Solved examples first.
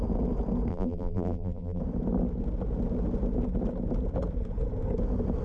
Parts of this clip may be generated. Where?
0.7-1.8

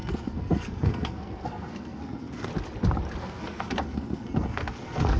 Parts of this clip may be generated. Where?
0.0-2.5; 3.2-5.2

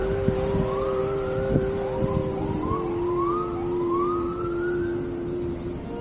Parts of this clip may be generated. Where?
none